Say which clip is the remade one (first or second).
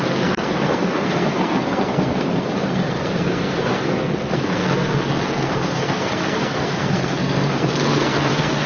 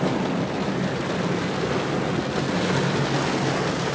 first